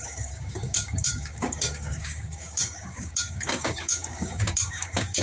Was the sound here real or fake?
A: fake